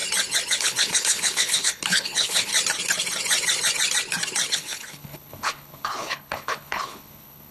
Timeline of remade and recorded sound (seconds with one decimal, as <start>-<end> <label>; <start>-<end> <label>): 0.0-0.6 recorded; 0.6-2.5 remade; 2.5-4.5 recorded; 4.5-7.5 remade